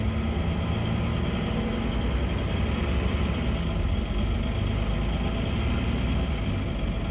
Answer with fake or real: real